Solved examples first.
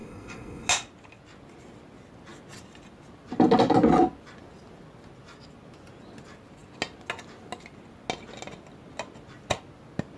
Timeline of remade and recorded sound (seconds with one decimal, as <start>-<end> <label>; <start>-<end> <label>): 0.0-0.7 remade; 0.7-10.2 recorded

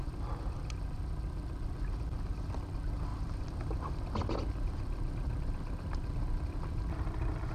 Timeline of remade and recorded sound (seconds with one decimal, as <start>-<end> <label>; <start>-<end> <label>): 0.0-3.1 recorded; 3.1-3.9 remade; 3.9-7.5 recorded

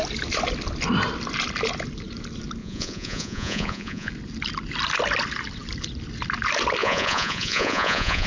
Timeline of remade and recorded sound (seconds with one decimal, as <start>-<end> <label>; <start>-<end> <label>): 0.0-2.6 recorded; 2.6-4.1 remade; 4.1-6.8 recorded; 6.8-8.3 remade

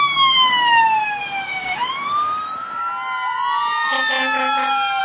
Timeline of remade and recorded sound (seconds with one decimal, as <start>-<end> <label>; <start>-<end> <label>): 0.0-2.9 remade; 2.9-5.0 recorded

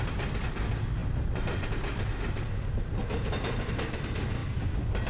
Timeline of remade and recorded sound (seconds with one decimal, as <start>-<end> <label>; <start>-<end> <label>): 0.0-5.1 recorded

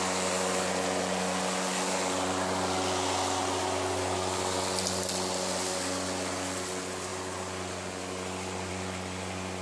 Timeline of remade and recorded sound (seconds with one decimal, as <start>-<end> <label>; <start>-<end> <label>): 0.0-9.6 recorded